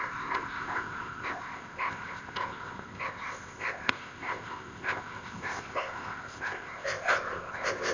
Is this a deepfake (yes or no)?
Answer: yes